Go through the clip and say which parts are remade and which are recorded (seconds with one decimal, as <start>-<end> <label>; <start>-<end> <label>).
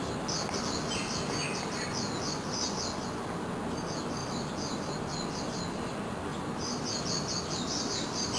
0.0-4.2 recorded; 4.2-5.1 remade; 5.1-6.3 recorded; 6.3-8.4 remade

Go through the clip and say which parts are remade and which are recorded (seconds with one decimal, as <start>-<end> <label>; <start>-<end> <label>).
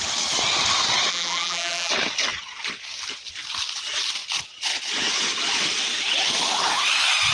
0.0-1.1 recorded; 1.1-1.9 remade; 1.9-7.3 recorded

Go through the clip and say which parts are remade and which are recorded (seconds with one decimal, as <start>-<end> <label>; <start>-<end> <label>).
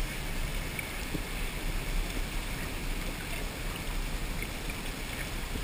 0.0-5.6 recorded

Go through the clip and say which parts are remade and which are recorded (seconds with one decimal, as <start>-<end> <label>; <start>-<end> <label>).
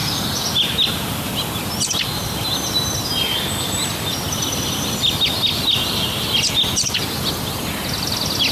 0.0-8.5 recorded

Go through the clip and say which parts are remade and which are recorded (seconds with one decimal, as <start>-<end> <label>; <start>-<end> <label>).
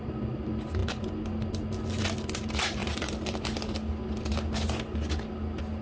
0.0-2.8 recorded; 2.8-3.4 remade; 3.4-5.8 recorded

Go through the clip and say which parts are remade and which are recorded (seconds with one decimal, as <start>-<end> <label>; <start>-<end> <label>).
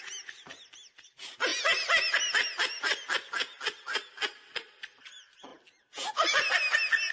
0.0-7.1 recorded